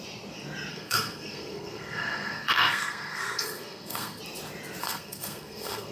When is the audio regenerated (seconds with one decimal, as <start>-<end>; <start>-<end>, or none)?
0.7-4.2; 4.8-5.9